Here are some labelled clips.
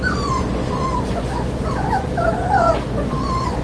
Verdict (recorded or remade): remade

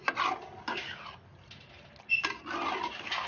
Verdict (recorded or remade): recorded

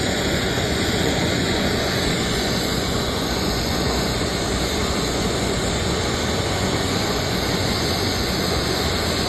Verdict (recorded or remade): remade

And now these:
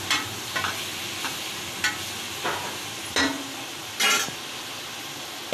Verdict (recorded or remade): recorded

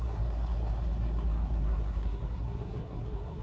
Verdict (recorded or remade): remade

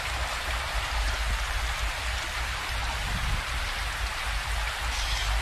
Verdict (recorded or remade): remade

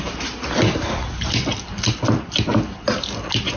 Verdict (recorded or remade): recorded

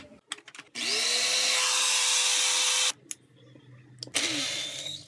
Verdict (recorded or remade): recorded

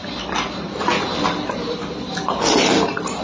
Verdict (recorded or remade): remade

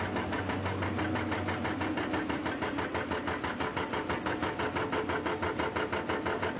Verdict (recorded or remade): recorded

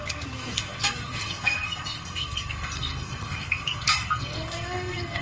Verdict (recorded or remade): remade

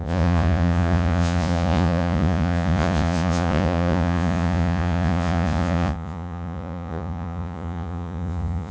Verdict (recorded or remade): remade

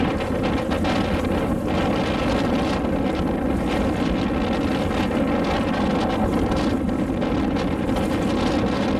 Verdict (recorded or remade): recorded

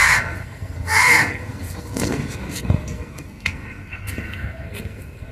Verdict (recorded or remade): remade